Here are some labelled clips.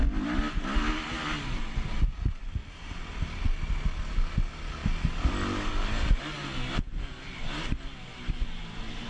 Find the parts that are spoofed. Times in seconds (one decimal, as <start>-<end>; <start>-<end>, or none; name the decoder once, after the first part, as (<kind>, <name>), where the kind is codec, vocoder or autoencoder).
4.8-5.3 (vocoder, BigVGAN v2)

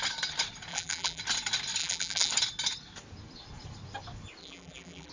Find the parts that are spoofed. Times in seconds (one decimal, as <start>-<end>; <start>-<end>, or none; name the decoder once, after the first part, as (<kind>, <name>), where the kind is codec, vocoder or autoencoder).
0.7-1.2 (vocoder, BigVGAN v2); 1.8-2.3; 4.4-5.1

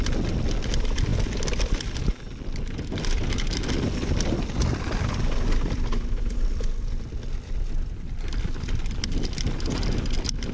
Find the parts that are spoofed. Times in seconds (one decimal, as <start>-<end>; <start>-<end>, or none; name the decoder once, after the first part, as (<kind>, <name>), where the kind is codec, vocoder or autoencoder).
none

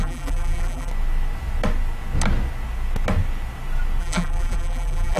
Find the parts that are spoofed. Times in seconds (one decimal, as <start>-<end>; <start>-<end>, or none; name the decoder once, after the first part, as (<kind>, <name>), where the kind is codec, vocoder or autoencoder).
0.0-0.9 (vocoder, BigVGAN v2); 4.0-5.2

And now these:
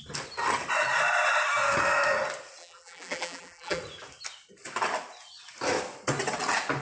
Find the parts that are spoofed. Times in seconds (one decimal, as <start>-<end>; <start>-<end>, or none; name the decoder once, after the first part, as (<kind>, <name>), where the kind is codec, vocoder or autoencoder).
2.6-3.8 (vocoder, BigVGAN v2)